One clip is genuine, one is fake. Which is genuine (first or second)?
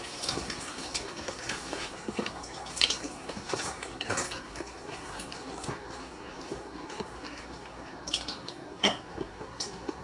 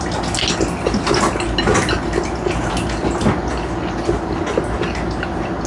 second